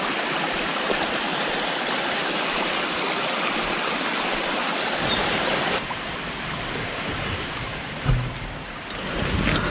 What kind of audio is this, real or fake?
real